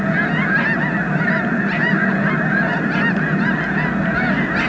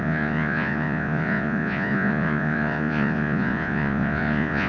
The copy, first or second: second